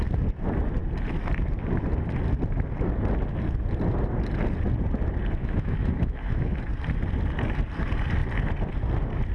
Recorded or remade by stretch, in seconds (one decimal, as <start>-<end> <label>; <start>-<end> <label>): 0.0-5.4 recorded; 5.4-6.6 remade; 6.6-9.3 recorded